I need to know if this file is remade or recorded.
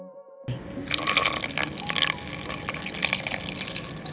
recorded